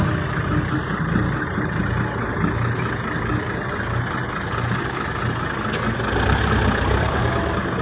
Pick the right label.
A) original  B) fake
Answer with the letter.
A